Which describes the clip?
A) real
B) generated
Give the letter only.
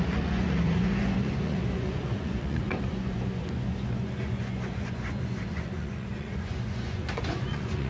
B